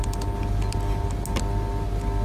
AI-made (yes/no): no